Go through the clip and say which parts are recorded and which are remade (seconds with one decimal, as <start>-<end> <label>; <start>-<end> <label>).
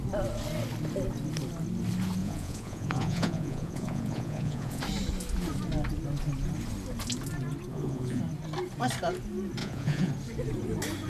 0.0-2.2 recorded; 2.2-4.8 remade; 4.8-7.7 recorded; 7.7-8.2 remade; 8.2-9.6 recorded; 9.6-10.1 remade; 10.1-11.1 recorded